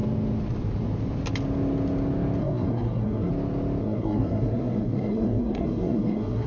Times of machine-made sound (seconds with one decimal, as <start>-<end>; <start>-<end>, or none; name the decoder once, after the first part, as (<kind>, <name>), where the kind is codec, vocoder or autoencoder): 2.4-3.3 (codec, SNAC); 3.8-6.5